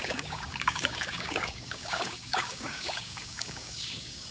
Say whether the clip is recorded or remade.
remade